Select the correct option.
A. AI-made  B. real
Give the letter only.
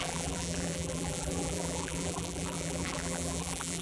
A